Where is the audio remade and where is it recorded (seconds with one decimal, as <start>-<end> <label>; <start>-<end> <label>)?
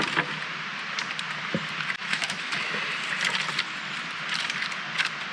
0.0-2.0 recorded; 2.0-2.5 remade; 2.5-5.3 recorded